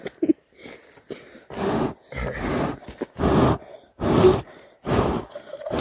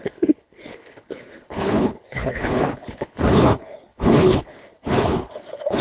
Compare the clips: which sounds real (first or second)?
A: first